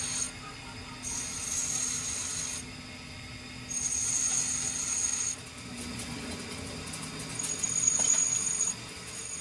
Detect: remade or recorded recorded